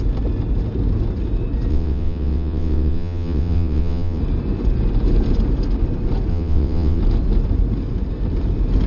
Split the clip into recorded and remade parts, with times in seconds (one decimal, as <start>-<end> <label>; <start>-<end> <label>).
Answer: 0.0-1.7 recorded; 1.7-4.2 remade; 4.2-6.3 recorded; 6.3-7.0 remade; 7.0-8.9 recorded